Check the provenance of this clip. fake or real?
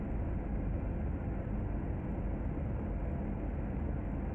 real